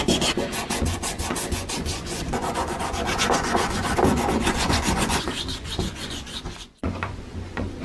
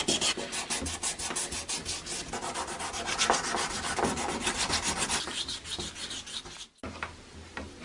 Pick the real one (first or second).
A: second